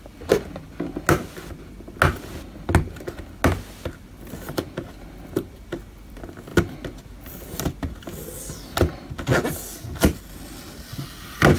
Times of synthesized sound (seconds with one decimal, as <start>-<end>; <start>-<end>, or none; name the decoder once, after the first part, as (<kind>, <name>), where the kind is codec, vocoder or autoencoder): none